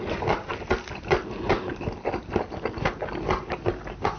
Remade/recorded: recorded